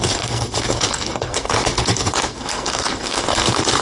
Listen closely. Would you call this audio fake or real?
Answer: fake